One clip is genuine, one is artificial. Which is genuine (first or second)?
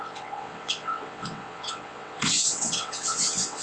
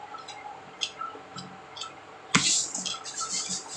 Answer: second